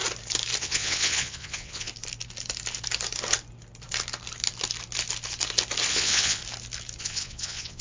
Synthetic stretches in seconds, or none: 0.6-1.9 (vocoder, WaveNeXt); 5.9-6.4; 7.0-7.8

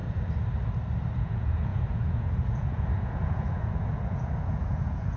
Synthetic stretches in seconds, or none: 1.2-5.2 (vocoder, Vocos)

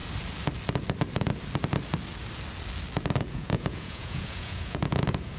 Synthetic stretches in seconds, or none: 3.2-5.4 (vocoder, Vocos)